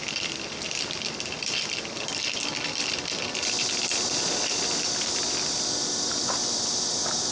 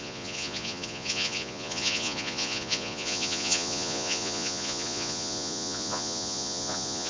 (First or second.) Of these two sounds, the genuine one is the first